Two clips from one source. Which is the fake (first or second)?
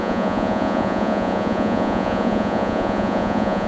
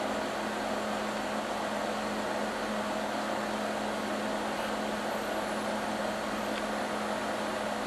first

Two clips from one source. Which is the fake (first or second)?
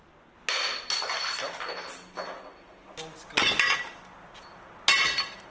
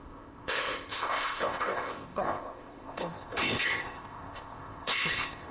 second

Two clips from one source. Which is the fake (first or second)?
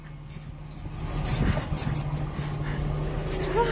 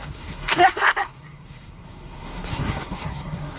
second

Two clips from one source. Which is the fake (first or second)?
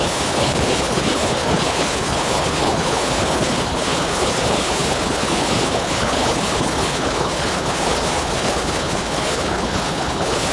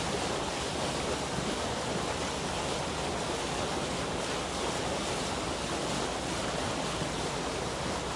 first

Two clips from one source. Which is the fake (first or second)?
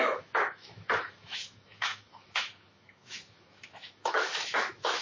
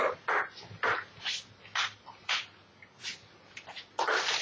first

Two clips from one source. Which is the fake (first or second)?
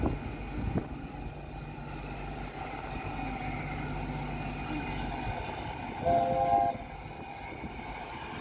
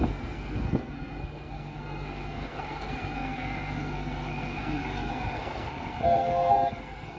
second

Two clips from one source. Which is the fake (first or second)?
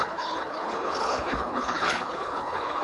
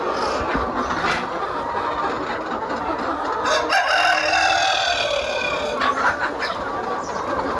first